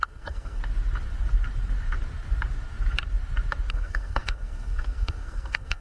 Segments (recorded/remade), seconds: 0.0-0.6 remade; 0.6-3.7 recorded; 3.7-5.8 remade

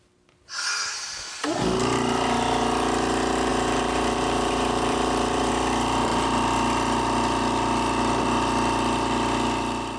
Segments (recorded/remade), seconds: 0.0-3.5 recorded; 3.5-5.5 remade; 5.5-10.0 recorded

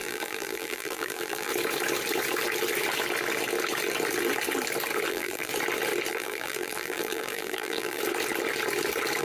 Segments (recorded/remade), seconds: 0.0-1.5 remade; 1.5-5.1 recorded; 5.1-5.5 remade; 5.5-6.1 recorded; 6.1-8.0 remade; 8.0-9.2 recorded